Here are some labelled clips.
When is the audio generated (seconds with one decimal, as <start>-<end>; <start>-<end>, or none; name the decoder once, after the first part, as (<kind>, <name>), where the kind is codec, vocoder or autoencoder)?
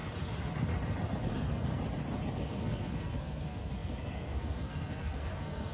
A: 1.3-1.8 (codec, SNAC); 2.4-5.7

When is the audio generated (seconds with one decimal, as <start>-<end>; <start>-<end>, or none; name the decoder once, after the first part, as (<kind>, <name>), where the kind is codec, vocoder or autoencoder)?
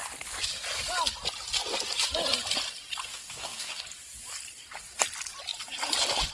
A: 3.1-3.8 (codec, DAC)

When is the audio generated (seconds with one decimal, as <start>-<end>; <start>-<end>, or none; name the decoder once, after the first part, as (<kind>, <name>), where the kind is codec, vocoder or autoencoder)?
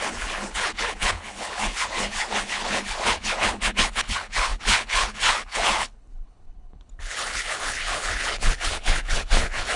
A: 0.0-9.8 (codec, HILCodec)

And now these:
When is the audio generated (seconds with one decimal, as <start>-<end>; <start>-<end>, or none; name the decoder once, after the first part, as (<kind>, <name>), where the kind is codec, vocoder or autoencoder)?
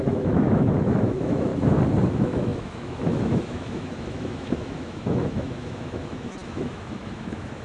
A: 0.0-1.5 (autoencoder, DAC-VAE); 2.1-7.6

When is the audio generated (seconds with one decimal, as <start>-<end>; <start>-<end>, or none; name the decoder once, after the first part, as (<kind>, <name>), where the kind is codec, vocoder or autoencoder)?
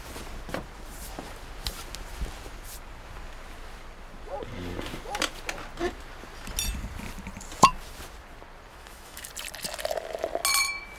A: 8.7-9.3 (autoencoder, DAC-VAE)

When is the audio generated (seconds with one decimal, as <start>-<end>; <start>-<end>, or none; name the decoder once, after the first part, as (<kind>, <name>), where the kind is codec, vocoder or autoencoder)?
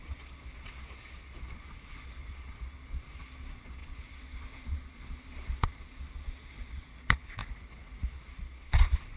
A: 0.0-7.4 (vocoder, Vocos); 8.1-9.2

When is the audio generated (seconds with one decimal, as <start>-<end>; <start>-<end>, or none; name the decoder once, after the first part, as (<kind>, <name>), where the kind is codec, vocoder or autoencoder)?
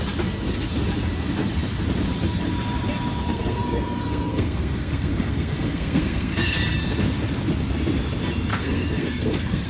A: 3.3-6.6 (codec, SNAC); 8.5-9.7